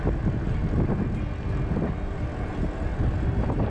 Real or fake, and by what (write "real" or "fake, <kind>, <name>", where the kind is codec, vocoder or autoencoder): real